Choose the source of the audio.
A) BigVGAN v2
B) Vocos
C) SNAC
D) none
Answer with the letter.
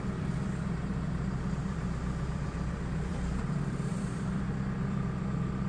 A